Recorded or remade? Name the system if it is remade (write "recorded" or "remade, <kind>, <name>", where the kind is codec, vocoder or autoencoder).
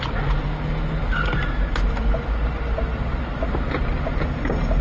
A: recorded